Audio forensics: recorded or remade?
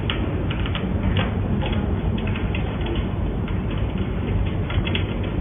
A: recorded